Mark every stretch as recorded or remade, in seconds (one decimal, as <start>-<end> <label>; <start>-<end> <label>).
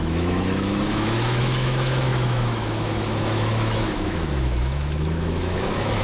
0.0-6.0 remade